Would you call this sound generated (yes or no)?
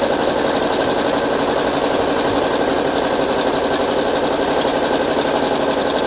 no